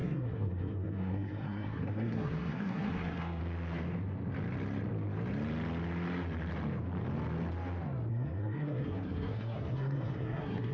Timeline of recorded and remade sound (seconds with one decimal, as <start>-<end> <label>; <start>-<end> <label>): 0.0-3.4 remade; 3.4-8.1 recorded; 8.1-10.7 remade